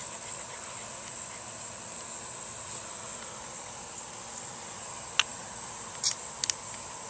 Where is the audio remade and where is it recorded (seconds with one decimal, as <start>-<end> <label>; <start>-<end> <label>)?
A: 0.0-7.1 recorded